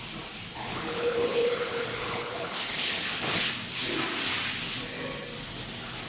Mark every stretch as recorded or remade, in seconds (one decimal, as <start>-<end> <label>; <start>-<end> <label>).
0.0-0.5 recorded; 0.5-3.5 remade; 3.5-6.1 recorded